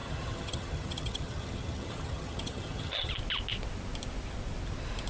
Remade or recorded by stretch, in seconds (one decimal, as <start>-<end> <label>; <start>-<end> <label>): 0.0-3.1 remade; 3.1-5.1 recorded